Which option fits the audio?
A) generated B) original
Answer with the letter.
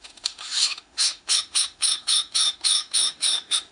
A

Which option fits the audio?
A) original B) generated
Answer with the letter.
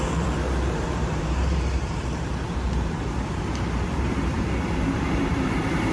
B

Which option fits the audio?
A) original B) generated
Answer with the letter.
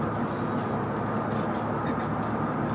A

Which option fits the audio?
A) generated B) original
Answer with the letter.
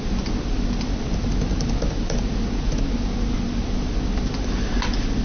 B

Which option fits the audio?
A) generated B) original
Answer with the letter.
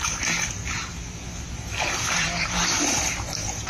A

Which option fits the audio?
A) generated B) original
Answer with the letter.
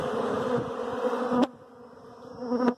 B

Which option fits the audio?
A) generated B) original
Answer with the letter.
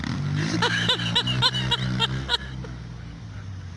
B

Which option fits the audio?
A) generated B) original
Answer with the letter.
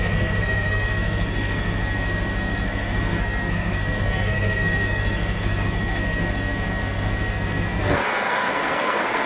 A